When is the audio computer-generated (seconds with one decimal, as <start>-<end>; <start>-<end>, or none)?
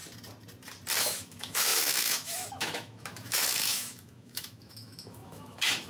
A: 1.0-5.9